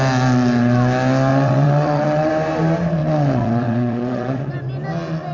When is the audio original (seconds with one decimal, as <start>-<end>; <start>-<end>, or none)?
0.0-1.3; 2.3-3.0; 4.5-5.3